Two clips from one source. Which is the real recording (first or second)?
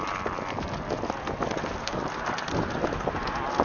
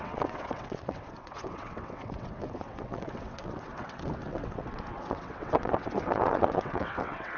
first